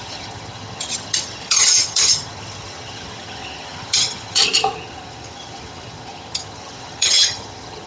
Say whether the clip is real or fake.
fake